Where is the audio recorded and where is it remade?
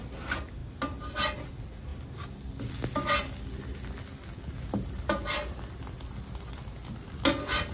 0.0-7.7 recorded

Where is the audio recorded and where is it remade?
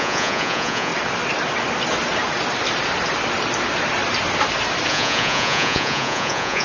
0.0-0.9 remade; 0.9-4.9 recorded; 4.9-6.6 remade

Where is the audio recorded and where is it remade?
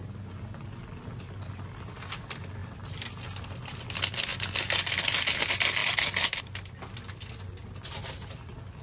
0.0-8.8 recorded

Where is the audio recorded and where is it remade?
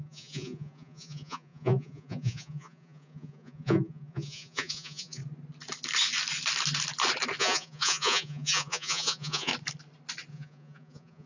0.0-5.2 remade; 5.2-7.4 recorded; 7.4-9.5 remade; 9.5-10.3 recorded; 10.3-11.3 remade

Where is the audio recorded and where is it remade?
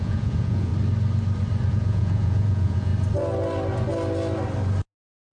0.0-0.7 remade; 0.7-1.7 recorded; 1.7-2.9 remade; 2.9-5.3 recorded